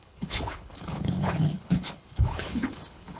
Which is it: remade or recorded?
remade